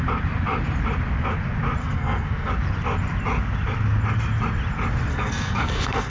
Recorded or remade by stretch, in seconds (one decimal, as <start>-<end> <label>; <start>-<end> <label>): 0.0-1.8 recorded; 1.8-2.5 remade; 2.5-5.1 recorded; 5.1-6.1 remade

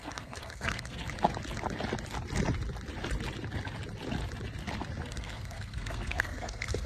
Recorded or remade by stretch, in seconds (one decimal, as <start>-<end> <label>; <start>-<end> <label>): 0.0-1.0 remade; 1.0-5.1 recorded; 5.1-6.9 remade

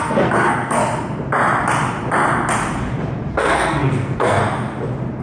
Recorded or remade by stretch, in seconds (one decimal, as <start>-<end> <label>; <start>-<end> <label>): 0.0-0.8 remade; 0.8-3.3 recorded; 3.3-4.4 remade; 4.4-5.2 recorded

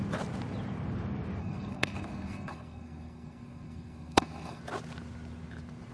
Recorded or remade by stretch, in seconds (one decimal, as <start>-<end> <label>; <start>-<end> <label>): 0.0-1.4 recorded; 1.4-4.6 remade; 4.6-5.9 recorded

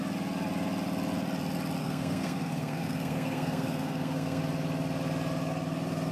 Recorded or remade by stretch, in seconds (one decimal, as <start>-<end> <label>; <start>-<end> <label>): 0.0-1.8 recorded; 1.8-4.4 remade; 4.4-6.1 recorded